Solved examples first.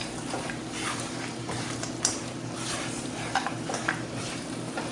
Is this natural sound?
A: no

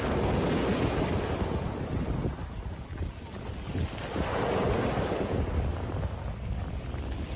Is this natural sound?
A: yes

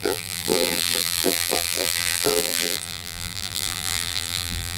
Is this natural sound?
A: no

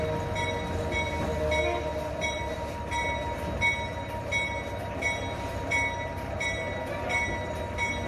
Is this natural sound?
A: yes